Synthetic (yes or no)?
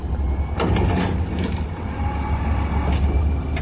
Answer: no